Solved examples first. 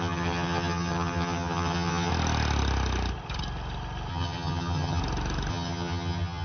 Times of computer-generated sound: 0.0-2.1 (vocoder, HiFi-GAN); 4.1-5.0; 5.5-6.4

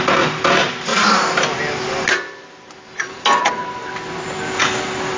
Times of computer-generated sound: none